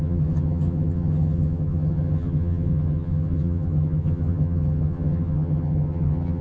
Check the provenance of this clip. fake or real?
fake